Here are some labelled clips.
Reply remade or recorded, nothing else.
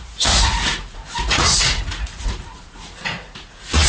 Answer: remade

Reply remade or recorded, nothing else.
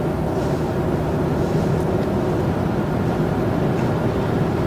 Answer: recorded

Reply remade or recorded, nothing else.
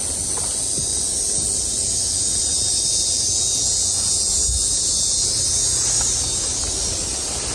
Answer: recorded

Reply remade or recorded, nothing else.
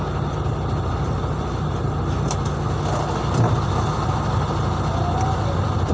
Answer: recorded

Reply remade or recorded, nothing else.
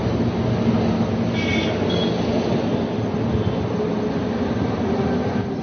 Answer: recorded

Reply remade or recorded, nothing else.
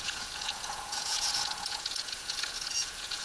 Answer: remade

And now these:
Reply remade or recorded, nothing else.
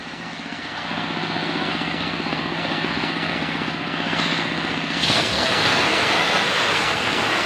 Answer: remade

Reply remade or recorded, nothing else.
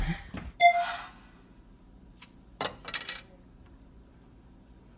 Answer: recorded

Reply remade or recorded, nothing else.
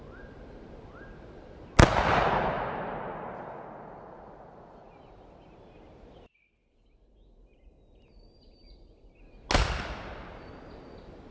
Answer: recorded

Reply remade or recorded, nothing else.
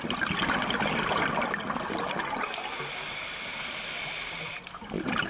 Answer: recorded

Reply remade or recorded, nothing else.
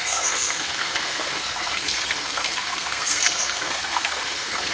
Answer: remade